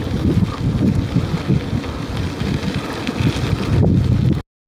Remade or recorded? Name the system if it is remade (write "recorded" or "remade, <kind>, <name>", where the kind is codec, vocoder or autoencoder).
recorded